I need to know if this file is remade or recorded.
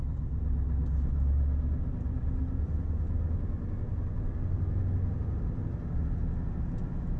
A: recorded